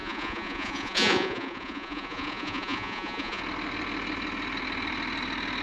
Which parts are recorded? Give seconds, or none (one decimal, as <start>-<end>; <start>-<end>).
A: 3.4-5.6